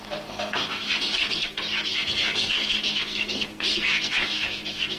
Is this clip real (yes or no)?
no